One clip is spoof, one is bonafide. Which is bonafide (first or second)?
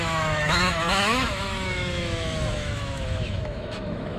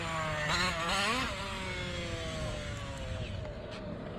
second